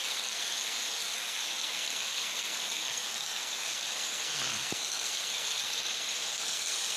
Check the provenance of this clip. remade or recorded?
remade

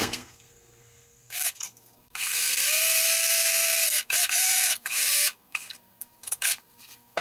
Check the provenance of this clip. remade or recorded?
remade